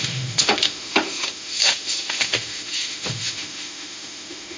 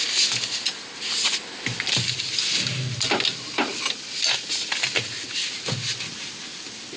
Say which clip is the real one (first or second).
second